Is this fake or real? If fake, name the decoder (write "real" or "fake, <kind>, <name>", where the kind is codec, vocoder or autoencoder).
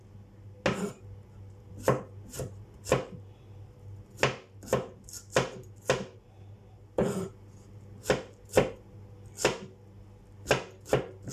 real